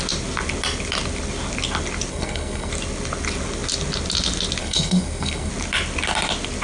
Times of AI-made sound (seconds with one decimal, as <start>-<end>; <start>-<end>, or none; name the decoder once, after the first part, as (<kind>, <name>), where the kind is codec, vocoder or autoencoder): 2.1-2.7 (codec, SNAC); 4.6-5.5